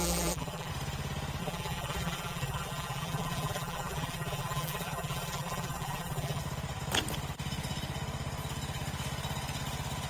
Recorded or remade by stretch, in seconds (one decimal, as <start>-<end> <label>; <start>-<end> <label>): 0.0-0.7 remade; 0.7-1.4 recorded; 1.4-6.4 remade; 6.4-10.1 recorded